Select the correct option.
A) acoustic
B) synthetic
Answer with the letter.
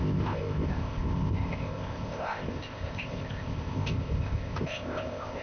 B